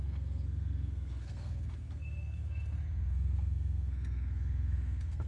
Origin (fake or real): fake